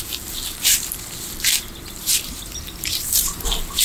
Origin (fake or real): fake